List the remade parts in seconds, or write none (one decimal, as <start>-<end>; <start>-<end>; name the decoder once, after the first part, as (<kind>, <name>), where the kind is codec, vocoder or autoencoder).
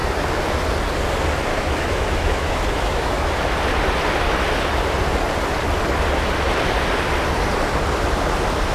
1.5-3.4 (autoencoder, DAC-VAE)